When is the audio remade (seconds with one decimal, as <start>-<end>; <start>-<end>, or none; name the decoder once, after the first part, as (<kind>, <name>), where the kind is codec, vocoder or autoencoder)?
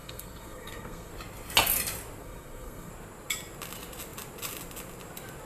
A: 0.0-1.1 (codec, SNAC); 2.2-2.9